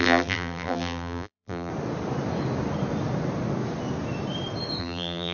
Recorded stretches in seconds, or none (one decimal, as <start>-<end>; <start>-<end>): 1.7-4.8